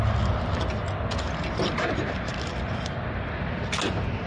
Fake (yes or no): no